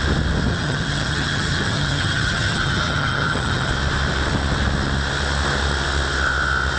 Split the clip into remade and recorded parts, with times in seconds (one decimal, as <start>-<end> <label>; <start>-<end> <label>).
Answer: 0.0-0.5 recorded; 0.5-3.7 remade; 3.7-6.8 recorded

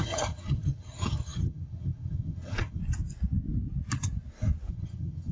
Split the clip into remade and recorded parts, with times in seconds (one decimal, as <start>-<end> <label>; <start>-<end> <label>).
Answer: 0.0-2.8 remade; 2.8-4.7 recorded; 4.7-5.3 remade

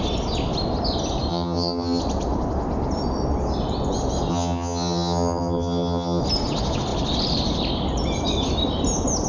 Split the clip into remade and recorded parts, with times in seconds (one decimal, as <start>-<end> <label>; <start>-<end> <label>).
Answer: 0.0-1.3 recorded; 1.3-2.0 remade; 2.0-4.3 recorded; 4.3-6.2 remade; 6.2-9.3 recorded

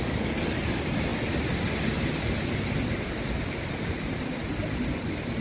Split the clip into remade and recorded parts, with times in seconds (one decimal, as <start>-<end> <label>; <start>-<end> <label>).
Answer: 0.0-5.4 recorded

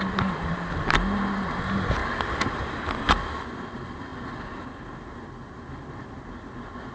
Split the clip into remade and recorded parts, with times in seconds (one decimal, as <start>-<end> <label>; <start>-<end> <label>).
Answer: 0.0-6.9 recorded

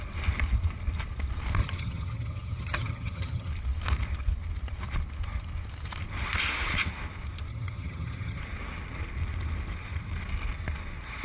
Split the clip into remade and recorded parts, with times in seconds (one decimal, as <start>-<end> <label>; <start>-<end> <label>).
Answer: 0.0-1.6 recorded; 1.6-3.5 remade; 3.5-7.5 recorded; 7.5-8.4 remade; 8.4-11.2 recorded

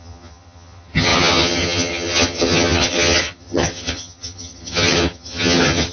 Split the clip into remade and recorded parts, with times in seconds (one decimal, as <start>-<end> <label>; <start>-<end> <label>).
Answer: 0.0-5.9 remade

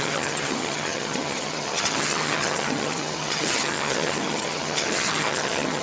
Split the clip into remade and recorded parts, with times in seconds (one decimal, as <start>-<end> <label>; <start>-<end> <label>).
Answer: 0.0-5.8 remade